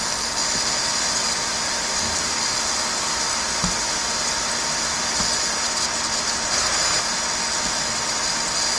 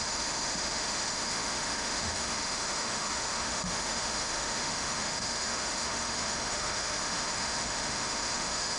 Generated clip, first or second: second